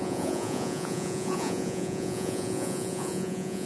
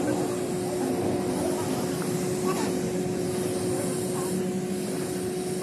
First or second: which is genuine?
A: second